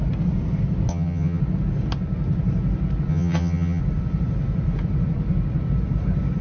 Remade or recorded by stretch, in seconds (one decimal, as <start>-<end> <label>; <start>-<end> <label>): 0.0-0.9 recorded; 0.9-1.4 remade; 1.4-3.1 recorded; 3.1-3.8 remade; 3.8-6.4 recorded